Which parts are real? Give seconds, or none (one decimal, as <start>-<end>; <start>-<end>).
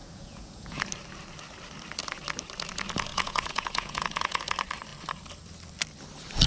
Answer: 0.8-3.1; 4.4-6.5